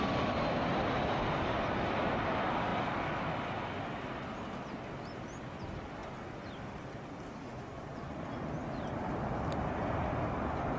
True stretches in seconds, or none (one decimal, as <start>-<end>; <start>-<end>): 0.0-7.5; 8.5-10.8